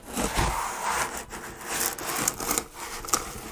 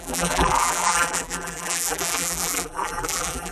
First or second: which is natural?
first